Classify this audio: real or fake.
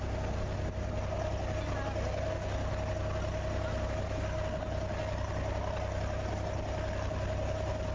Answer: real